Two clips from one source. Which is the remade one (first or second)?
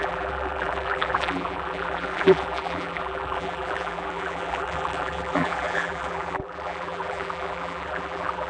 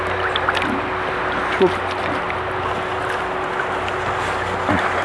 first